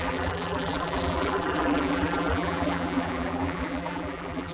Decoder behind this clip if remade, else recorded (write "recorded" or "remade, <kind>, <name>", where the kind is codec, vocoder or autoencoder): remade, vocoder, BigVGAN v2